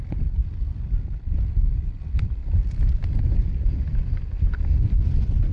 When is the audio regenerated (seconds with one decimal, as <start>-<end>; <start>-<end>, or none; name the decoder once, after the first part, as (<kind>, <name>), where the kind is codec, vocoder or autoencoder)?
2.4-4.5 (vocoder, BigVGAN v2)